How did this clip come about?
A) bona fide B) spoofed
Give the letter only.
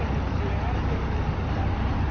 A